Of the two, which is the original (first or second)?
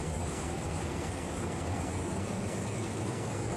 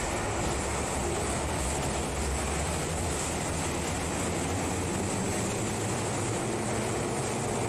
second